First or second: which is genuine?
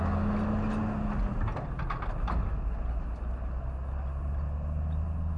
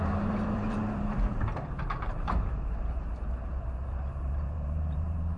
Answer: first